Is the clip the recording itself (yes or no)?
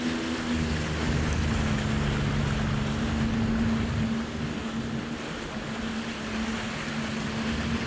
yes